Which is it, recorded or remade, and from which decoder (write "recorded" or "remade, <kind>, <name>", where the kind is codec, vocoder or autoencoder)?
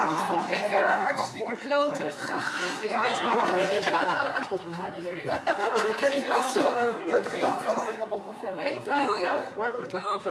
remade, codec, SNAC